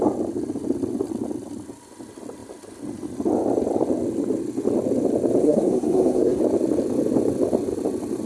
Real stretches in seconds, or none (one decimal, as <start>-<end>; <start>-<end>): 0.0-5.4; 6.4-8.3